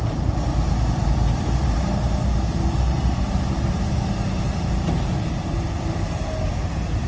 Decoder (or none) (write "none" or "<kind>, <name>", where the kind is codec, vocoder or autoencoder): vocoder, BigVGAN v2